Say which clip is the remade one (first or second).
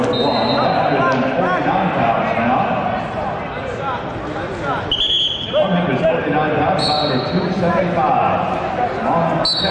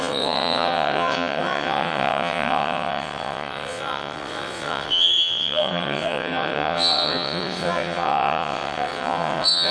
second